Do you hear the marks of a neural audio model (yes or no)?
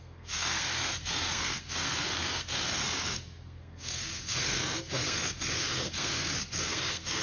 yes